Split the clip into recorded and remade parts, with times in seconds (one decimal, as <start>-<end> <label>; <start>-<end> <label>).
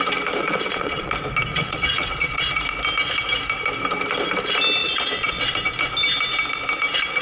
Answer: 0.0-0.4 recorded; 0.4-1.1 remade; 1.1-1.5 recorded; 1.5-2.6 remade; 2.6-4.8 recorded; 4.8-5.4 remade; 5.4-7.2 recorded